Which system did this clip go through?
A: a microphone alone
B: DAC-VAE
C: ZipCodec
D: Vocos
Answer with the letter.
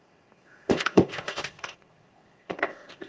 C